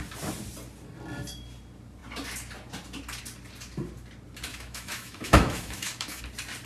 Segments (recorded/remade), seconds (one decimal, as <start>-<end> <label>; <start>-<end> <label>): 0.0-4.5 recorded; 4.5-6.2 remade; 6.2-6.7 recorded